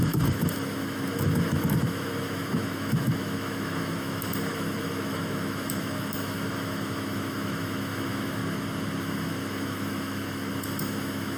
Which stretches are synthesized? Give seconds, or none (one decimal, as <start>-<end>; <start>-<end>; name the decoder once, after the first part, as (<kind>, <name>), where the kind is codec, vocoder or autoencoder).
0.0-8.4 (autoencoder, DAC-VAE); 9.0-11.4